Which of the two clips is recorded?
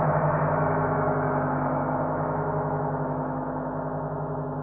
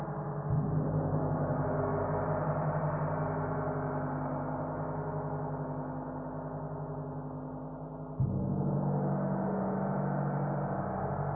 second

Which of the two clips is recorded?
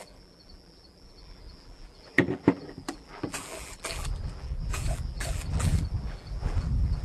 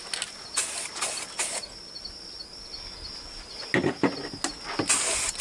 second